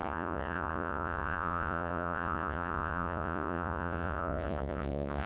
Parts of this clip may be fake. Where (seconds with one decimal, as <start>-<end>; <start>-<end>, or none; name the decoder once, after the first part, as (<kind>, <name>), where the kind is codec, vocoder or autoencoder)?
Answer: 0.0-5.3 (vocoder, Vocos)